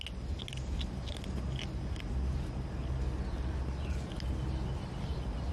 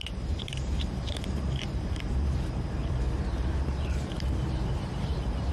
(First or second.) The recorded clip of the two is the first